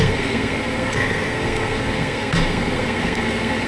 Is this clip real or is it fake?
fake